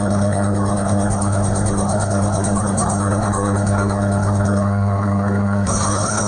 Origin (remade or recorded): remade